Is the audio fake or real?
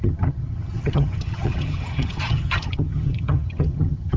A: fake